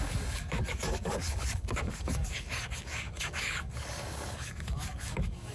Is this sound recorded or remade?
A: remade